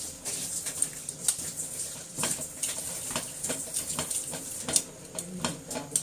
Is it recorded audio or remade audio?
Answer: recorded